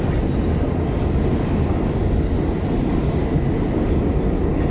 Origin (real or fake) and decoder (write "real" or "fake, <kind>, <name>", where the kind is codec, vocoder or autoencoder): real